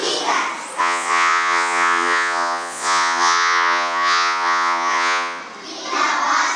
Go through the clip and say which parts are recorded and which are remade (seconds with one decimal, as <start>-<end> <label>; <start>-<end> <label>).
0.0-0.8 recorded; 0.8-5.4 remade; 5.4-6.6 recorded